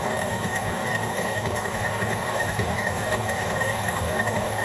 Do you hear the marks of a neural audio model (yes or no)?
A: yes